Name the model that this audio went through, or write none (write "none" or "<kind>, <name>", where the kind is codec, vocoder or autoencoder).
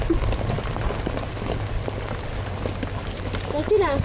none